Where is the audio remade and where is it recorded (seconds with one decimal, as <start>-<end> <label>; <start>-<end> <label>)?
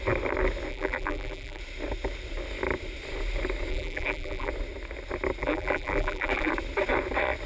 0.0-0.7 recorded; 0.7-1.6 remade; 1.6-3.7 recorded; 3.7-4.5 remade; 4.5-5.4 recorded; 5.4-6.5 remade; 6.5-7.5 recorded